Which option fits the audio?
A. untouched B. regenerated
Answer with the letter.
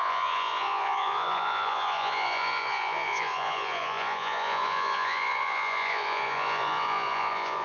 B